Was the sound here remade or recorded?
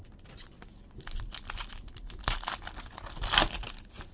recorded